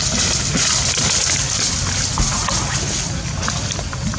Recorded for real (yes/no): yes